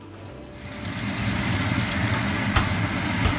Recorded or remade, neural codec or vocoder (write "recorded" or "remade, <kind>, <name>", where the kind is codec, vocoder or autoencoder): recorded